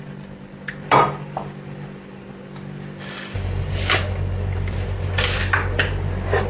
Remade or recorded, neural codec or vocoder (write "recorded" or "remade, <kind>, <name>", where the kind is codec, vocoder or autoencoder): recorded